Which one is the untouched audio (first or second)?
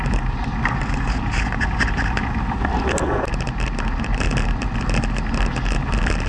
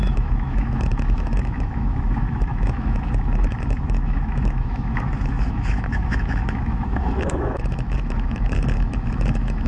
first